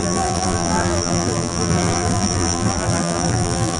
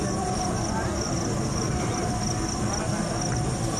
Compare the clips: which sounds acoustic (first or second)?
second